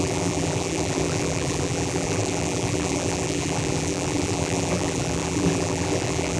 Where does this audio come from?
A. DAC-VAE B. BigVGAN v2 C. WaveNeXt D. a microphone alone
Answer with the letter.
B